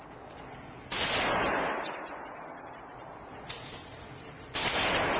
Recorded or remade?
recorded